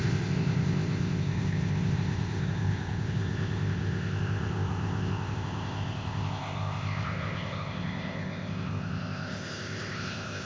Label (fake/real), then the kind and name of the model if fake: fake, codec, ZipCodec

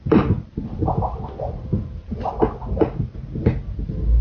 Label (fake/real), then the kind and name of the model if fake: real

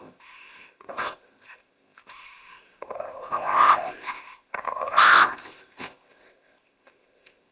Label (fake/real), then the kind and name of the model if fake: fake, codec, ZipCodec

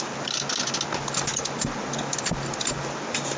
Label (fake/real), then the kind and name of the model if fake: real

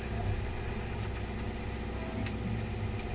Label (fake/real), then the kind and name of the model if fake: real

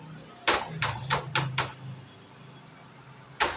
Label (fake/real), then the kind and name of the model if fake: real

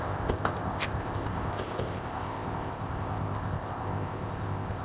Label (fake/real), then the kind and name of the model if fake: fake, codec, ZipCodec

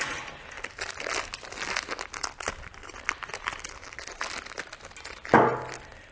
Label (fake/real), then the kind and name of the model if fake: real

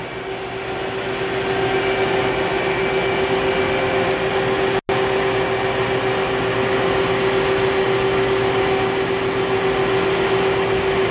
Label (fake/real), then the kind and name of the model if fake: real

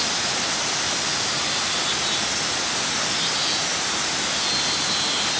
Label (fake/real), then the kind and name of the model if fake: real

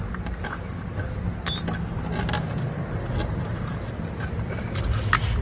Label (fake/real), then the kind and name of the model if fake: real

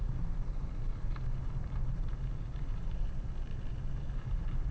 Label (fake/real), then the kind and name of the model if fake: real